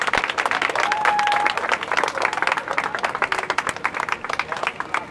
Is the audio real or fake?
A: real